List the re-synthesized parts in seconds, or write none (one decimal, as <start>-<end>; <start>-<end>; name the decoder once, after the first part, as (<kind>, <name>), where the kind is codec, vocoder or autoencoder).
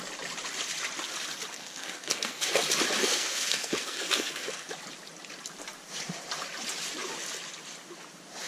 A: 1.5-2.6 (codec, SNAC); 3.0-4.7